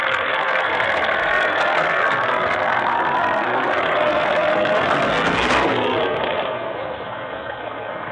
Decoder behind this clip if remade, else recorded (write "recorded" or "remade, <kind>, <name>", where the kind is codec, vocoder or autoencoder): remade, codec, SNAC